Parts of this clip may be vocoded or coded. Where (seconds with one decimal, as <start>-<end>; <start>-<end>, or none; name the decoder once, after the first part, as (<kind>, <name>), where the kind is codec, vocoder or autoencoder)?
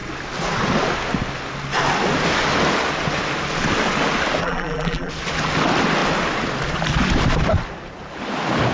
4.4-5.1 (vocoder, BigVGAN v2)